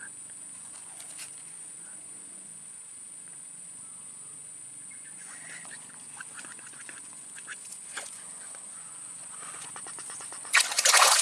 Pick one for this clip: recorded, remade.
remade